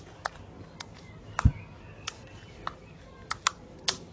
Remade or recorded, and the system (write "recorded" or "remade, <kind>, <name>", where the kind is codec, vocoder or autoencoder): recorded